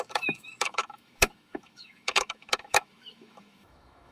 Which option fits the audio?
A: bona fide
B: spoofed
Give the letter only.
B